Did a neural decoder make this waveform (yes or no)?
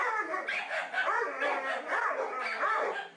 no